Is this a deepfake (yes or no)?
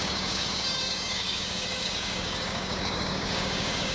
yes